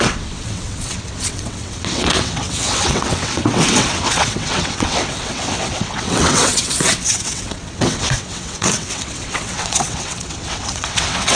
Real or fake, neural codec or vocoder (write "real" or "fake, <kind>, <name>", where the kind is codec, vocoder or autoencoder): fake, vocoder, WaveNeXt